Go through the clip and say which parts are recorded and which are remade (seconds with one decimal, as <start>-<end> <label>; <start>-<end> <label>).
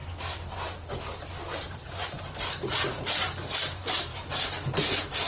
0.0-5.3 recorded